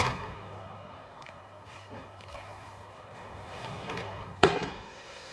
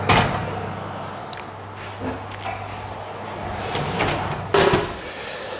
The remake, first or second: first